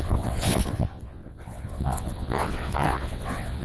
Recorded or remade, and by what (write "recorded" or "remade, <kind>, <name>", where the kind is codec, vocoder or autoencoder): remade, vocoder, WaveNeXt